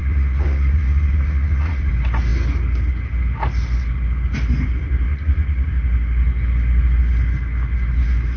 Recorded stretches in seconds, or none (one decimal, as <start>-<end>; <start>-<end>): 1.9-5.1; 5.7-8.4